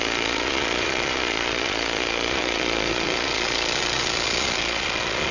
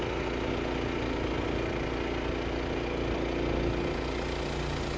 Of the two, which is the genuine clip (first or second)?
second